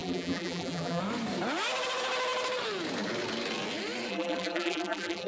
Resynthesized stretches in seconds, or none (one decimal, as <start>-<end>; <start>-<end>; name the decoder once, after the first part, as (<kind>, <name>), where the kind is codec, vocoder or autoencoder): 0.0-1.0 (vocoder, BigVGAN v2); 4.1-5.3